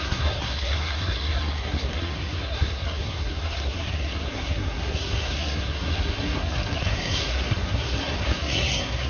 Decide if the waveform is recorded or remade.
remade